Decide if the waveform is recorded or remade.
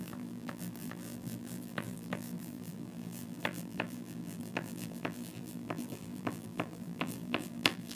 remade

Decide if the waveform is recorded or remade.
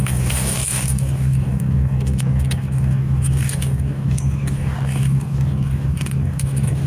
remade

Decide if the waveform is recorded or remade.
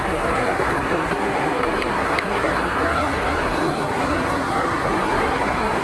remade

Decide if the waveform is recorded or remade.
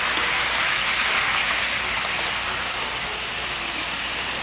recorded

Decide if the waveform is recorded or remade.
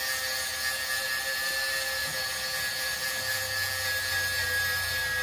recorded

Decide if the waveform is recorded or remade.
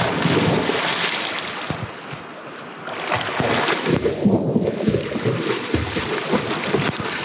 recorded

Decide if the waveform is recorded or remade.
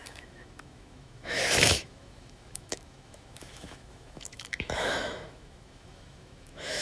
remade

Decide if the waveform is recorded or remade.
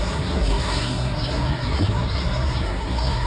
remade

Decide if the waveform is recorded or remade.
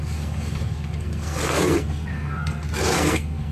remade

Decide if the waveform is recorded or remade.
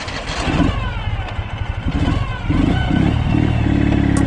recorded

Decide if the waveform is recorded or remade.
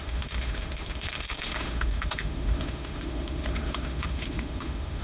remade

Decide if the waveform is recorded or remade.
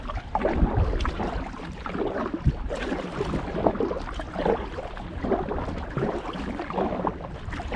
recorded